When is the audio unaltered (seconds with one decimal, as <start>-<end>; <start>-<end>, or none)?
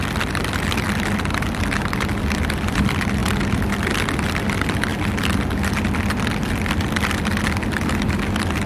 0.0-8.7